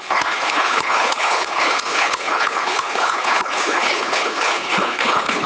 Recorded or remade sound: remade